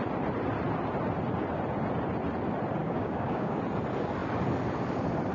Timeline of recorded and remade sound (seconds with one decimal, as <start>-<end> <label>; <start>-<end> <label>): 0.0-2.8 recorded; 2.8-3.6 remade; 3.6-5.3 recorded